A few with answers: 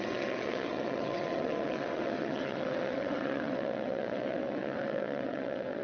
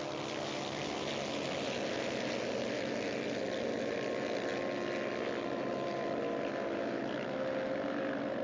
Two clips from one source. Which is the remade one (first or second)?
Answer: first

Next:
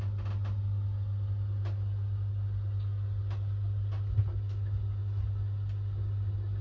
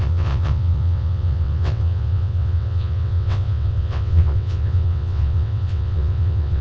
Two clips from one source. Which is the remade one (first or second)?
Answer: second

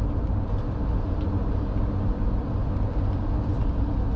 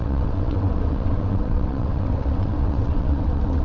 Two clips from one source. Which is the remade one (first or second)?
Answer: second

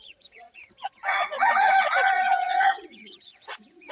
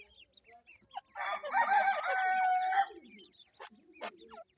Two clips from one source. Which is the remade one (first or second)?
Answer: first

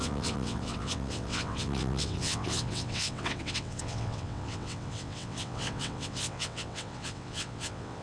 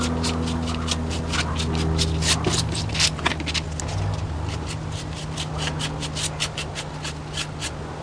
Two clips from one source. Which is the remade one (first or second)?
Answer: first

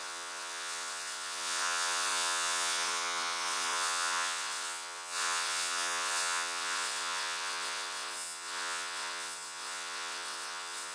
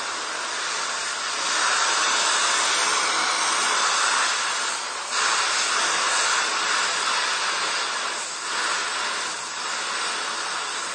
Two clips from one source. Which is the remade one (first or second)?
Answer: first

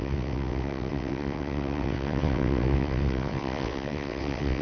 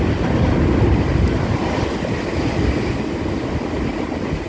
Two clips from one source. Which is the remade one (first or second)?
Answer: first